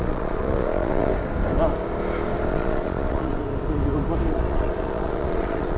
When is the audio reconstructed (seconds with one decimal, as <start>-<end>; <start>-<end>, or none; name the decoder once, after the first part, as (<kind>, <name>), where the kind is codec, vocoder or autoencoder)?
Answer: 0.0-1.1 (vocoder, Vocos); 2.5-3.4; 4.3-5.8